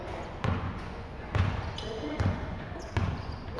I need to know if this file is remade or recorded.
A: remade